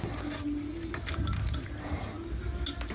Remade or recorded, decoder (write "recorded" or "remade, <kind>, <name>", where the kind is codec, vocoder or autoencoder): recorded